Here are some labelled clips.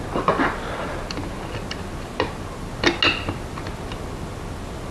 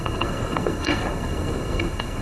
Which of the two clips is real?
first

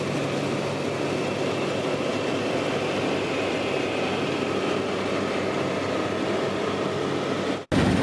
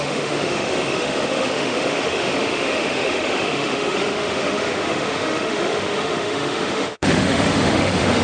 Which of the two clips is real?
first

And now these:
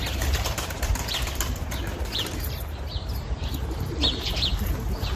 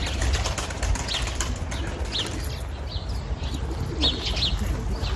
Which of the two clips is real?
second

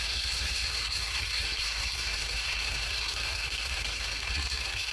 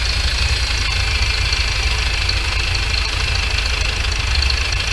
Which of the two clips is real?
second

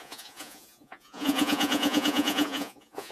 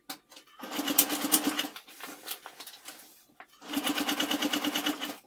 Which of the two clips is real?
second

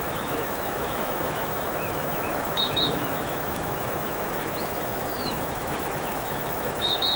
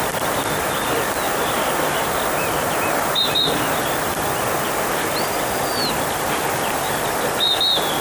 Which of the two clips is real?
second